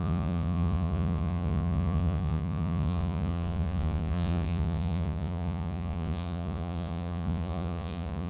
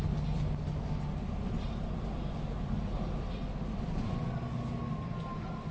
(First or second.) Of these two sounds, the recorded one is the second